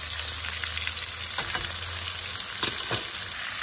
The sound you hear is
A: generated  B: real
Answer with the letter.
B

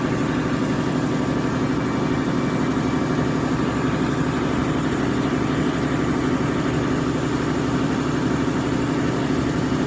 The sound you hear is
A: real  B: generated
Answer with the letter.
A